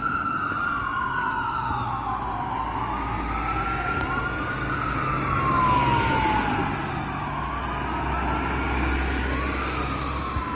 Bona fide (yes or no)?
yes